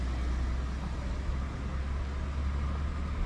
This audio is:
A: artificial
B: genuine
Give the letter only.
B